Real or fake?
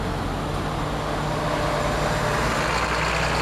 real